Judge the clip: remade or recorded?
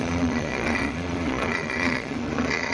remade